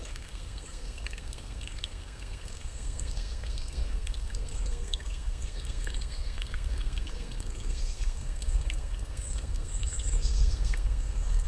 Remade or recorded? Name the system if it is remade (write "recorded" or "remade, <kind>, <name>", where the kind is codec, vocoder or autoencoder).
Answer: remade, codec, SNAC